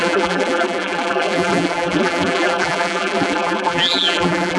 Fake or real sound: fake